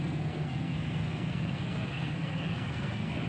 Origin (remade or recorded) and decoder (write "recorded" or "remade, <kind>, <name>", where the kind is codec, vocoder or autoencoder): remade, codec, SNAC